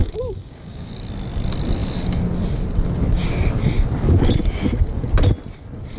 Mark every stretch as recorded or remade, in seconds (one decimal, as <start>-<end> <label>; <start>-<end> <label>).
0.0-0.9 remade; 0.9-6.0 recorded